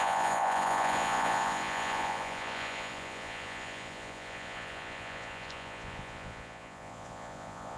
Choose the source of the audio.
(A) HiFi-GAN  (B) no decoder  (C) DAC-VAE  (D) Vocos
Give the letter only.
D